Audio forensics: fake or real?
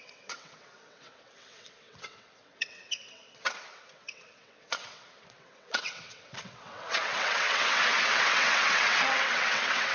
fake